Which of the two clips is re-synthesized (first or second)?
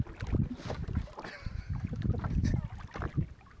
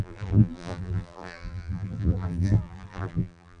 second